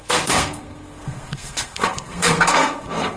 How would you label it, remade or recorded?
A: remade